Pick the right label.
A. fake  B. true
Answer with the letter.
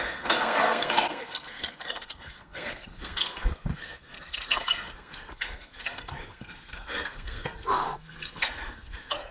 A